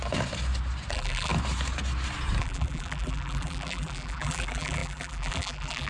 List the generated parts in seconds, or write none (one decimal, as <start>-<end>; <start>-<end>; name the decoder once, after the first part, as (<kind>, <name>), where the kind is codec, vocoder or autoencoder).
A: 0.9-1.3 (vocoder, BigVGAN v2); 2.4-5.9